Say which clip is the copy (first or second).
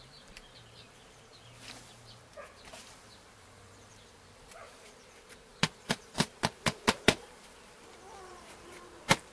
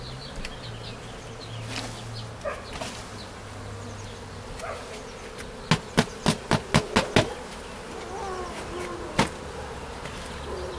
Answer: first